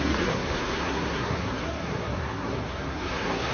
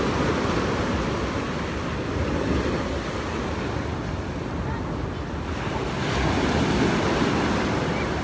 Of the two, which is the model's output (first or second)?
first